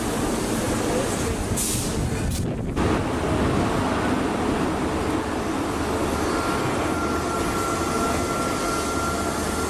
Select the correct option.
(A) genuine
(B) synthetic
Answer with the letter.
A